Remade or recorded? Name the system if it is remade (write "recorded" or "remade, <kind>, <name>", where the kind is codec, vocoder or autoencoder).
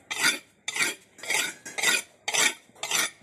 recorded